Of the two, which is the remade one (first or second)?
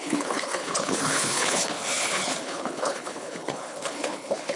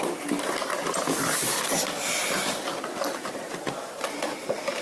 first